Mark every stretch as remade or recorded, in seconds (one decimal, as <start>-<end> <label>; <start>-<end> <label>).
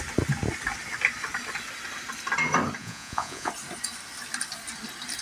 0.0-2.8 recorded; 2.8-3.5 remade; 3.5-5.2 recorded